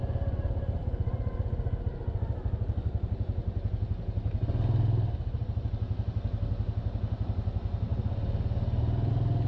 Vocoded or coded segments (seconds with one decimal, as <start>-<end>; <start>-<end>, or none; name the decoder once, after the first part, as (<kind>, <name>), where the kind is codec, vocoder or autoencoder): none